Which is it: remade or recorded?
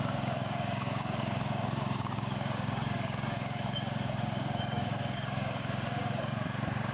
remade